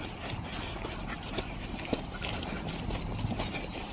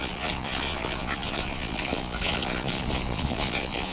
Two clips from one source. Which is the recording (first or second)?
first